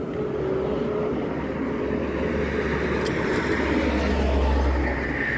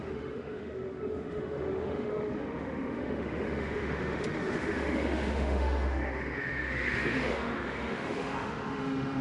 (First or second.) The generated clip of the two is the second